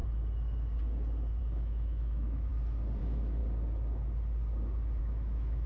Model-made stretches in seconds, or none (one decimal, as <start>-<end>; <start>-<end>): 1.4-2.5; 3.0-3.4; 5.0-5.7